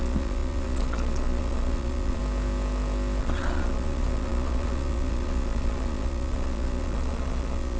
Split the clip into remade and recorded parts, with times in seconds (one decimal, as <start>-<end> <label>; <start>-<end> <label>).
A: 0.0-2.2 remade; 2.2-3.2 recorded; 3.2-7.8 remade